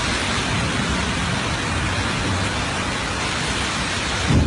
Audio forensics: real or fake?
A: real